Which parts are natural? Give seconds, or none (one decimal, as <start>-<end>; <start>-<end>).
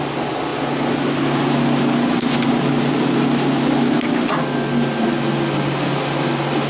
0.0-6.7